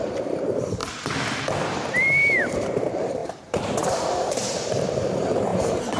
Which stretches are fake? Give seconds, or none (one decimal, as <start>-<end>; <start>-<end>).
0.0-0.8; 1.7-6.0